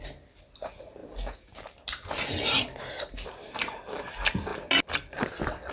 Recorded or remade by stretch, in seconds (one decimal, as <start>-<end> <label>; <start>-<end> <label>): 0.0-5.7 recorded